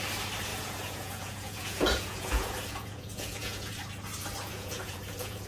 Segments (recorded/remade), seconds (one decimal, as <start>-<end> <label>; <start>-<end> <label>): 0.0-0.5 recorded; 0.5-3.8 remade; 3.8-4.5 recorded; 4.5-5.5 remade